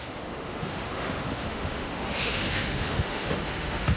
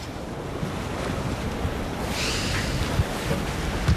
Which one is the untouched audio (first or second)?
second